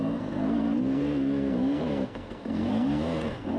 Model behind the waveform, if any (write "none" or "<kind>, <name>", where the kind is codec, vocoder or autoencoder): codec, SNAC